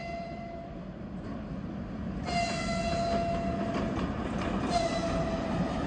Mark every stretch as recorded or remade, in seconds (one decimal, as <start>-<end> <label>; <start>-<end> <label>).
0.0-0.7 remade; 0.7-5.9 recorded